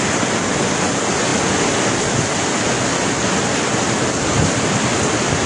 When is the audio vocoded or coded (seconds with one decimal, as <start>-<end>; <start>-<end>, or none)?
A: none